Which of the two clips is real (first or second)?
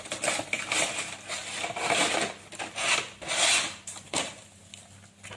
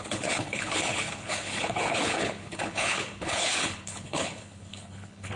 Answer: first